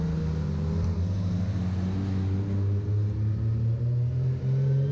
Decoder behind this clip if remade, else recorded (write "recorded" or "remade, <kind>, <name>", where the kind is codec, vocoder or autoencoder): recorded